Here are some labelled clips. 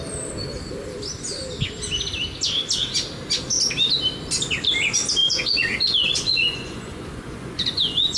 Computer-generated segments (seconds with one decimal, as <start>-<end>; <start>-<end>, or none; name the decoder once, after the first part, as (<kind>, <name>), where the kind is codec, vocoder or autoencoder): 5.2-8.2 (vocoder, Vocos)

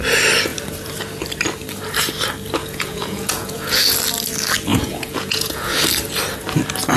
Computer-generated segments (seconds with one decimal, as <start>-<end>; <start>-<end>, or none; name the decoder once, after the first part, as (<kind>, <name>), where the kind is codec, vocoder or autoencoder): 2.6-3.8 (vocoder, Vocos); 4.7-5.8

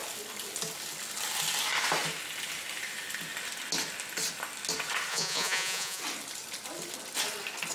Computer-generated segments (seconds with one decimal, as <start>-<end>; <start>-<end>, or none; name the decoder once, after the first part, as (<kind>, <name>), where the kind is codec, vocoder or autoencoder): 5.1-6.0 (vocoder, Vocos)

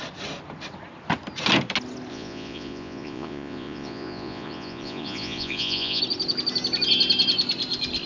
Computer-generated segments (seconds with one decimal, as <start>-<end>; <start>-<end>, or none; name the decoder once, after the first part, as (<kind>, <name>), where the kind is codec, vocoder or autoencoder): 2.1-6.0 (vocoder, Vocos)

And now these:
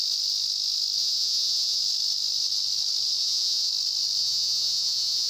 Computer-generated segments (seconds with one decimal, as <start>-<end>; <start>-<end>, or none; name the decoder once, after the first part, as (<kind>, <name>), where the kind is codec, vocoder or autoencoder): 1.0-1.8 (vocoder, Vocos); 3.2-3.7; 4.2-5.3

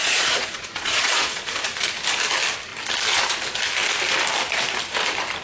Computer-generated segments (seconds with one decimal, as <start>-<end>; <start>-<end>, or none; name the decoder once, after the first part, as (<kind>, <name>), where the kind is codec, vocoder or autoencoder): 0.0-1.4 (vocoder, Vocos)

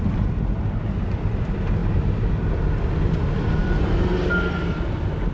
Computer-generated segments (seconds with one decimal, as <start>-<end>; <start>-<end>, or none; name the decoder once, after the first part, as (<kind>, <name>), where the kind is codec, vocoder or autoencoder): none